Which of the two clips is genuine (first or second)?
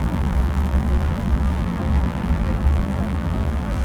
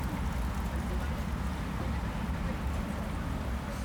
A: second